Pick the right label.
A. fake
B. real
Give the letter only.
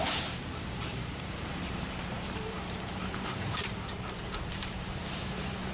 A